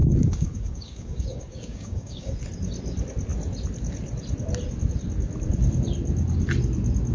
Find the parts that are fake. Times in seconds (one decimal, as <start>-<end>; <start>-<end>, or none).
0.0-2.3